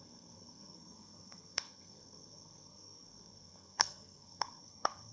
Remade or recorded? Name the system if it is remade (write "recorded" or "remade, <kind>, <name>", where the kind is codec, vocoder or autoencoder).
remade, codec, SNAC